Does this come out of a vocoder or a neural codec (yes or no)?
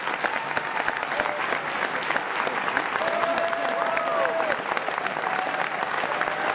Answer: no